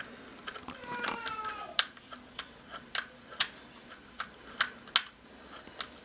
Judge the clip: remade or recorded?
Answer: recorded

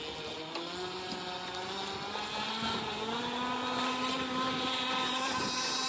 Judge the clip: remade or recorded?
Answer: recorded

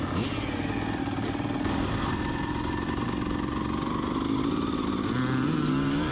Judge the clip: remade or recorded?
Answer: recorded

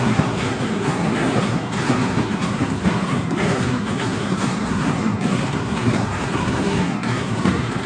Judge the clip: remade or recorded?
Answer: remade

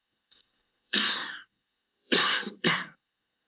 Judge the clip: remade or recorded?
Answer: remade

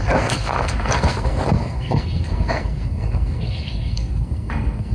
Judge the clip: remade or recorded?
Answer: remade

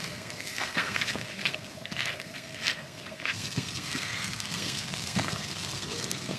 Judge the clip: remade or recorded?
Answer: remade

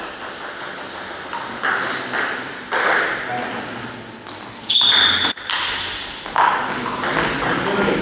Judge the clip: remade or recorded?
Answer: recorded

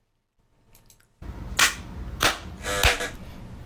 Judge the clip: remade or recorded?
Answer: recorded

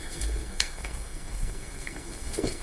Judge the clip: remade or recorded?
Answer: remade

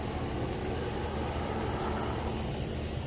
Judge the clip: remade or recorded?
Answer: recorded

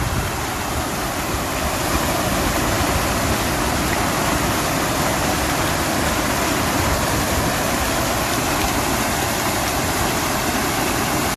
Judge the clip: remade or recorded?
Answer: recorded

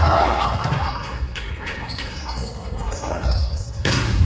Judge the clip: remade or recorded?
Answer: remade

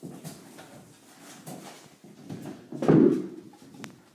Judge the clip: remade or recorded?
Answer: recorded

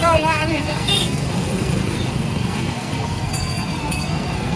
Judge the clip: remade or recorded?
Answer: remade